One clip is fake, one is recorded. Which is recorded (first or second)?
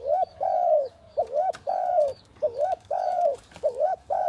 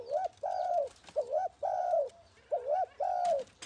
second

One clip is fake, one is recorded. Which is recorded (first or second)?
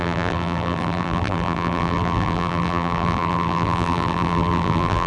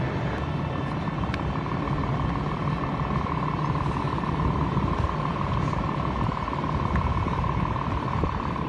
second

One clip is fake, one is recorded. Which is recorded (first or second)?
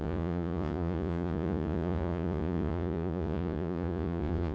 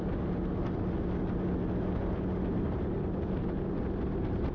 second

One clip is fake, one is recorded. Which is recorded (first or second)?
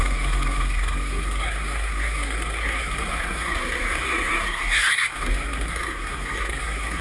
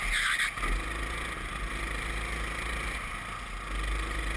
second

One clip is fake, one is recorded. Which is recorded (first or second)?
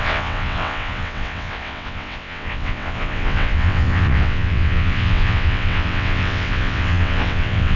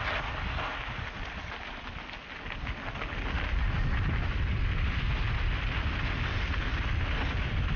second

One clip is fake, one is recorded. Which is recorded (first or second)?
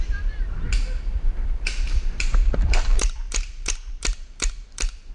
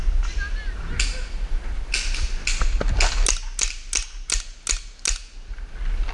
second